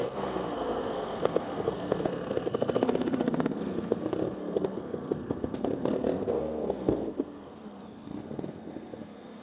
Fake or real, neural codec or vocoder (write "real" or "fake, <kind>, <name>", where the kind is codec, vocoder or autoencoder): fake, codec, SNAC